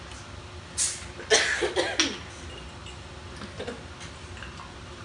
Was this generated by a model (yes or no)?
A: no